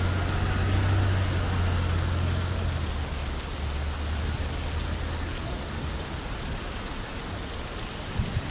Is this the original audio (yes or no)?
yes